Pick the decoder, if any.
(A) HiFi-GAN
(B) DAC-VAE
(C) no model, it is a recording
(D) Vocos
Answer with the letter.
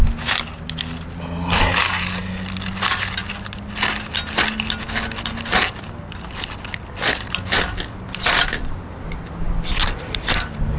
C